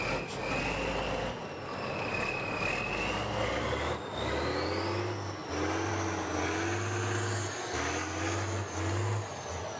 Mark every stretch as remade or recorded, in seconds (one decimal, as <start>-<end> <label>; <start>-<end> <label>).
0.0-9.8 recorded